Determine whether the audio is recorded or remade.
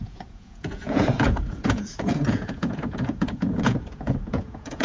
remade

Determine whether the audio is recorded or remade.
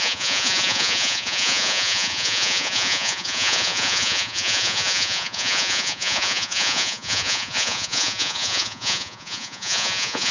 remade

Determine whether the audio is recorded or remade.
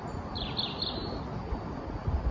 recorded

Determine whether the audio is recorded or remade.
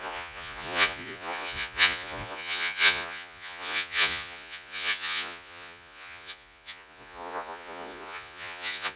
remade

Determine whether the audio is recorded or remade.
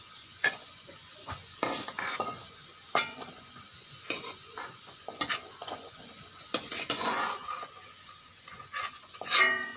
remade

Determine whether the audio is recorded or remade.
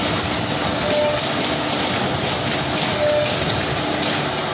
recorded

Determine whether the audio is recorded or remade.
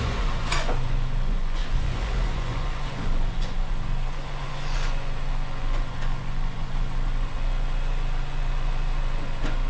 remade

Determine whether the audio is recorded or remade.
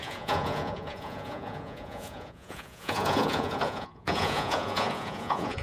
remade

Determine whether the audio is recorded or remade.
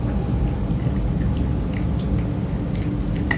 recorded